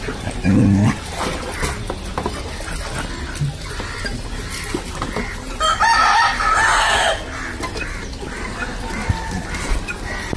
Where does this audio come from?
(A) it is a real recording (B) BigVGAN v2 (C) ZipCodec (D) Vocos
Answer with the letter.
A